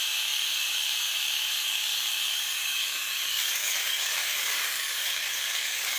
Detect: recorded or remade remade